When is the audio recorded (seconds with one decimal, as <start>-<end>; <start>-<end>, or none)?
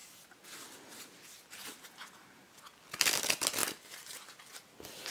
0.0-5.1